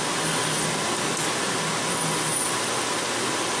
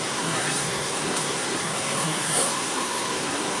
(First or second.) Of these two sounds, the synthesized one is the second